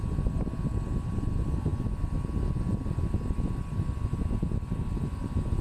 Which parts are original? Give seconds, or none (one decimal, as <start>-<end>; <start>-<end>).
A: 0.0-5.6